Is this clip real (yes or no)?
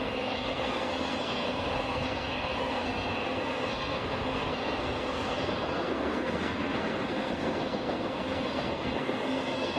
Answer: no